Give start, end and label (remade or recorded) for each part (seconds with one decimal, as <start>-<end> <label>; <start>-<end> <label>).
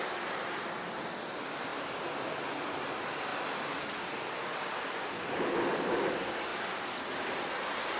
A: 0.0-1.7 recorded; 1.7-2.6 remade; 2.6-3.3 recorded; 3.3-3.9 remade; 3.9-6.5 recorded; 6.5-7.0 remade; 7.0-8.0 recorded